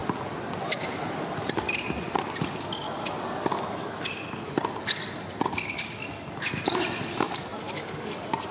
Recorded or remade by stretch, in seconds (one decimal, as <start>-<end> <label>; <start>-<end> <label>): 0.0-8.5 recorded